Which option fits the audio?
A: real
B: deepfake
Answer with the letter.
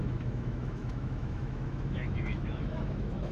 B